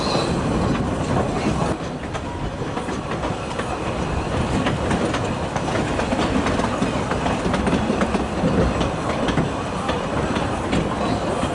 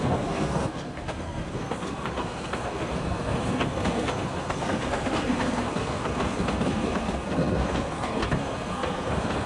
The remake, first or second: second